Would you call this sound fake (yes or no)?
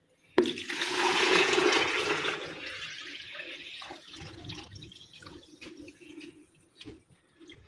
yes